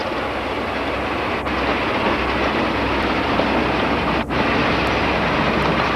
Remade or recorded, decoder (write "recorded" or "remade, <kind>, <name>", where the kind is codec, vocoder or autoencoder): recorded